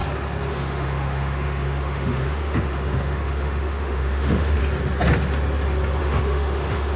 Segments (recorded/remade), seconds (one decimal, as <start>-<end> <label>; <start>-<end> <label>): 0.0-0.5 recorded; 0.5-4.6 remade; 4.6-6.0 recorded; 6.0-7.0 remade